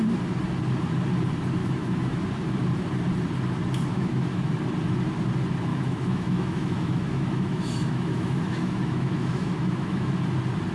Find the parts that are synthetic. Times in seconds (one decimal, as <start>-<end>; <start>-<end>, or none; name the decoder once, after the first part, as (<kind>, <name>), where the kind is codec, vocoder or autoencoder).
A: 1.6-2.2 (autoencoder, DAC-VAE); 3.9-4.5; 5.7-10.1